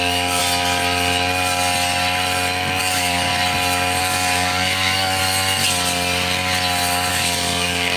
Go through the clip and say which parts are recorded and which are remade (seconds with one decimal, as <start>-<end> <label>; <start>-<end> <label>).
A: 0.0-0.4 remade; 0.4-2.8 recorded; 2.8-3.3 remade; 3.3-4.0 recorded; 4.0-5.2 remade; 5.2-7.1 recorded; 7.1-8.0 remade